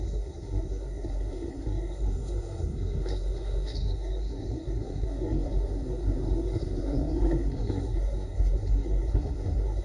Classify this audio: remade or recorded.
remade